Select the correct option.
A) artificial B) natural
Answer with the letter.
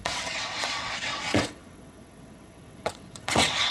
A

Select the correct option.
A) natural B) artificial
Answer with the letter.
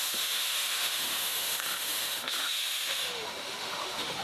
B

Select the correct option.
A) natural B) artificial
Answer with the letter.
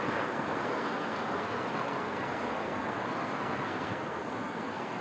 B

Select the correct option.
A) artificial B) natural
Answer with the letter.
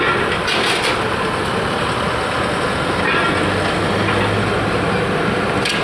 B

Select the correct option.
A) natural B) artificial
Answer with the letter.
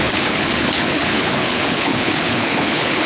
B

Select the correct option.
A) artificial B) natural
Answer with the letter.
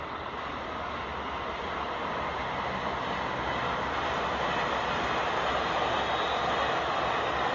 B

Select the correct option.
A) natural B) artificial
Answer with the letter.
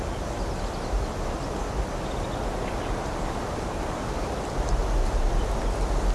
A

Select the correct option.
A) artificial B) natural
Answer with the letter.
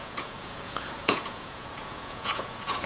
A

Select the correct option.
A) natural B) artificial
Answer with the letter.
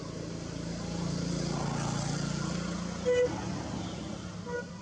A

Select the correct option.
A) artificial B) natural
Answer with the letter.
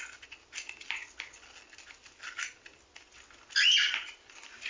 B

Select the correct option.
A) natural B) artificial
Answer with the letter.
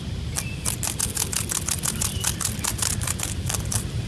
B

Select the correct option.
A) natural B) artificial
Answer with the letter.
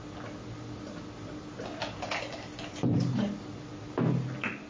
A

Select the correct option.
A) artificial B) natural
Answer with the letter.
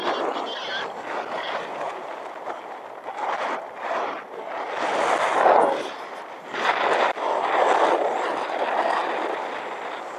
B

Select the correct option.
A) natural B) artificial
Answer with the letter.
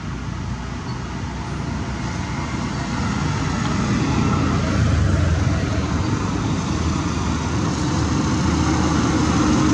A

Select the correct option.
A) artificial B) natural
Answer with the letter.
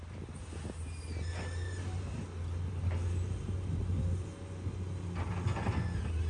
B